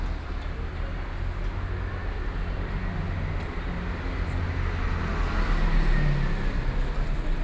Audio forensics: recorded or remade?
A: recorded